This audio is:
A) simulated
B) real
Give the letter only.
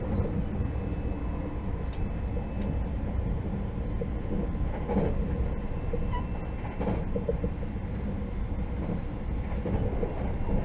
B